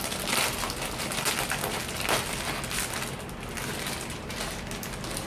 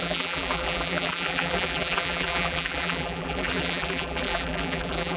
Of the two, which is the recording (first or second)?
first